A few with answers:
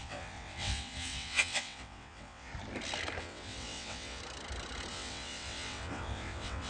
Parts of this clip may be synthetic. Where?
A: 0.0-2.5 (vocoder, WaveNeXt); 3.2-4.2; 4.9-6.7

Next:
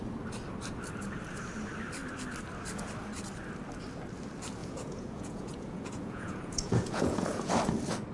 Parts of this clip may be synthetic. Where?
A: 4.6-7.5 (vocoder, Vocos)

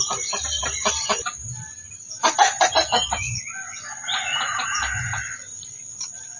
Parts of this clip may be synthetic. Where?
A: 0.6-3.4 (vocoder, BigVGAN v2); 5.1-5.8

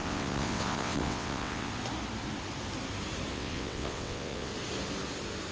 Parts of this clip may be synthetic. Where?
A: 0.0-1.7 (vocoder, WaveNeXt); 3.3-4.5

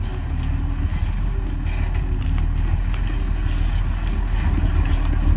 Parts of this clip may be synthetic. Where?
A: none

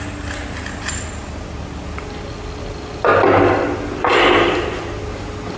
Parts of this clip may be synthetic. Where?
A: none